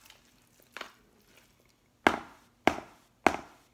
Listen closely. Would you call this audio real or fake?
real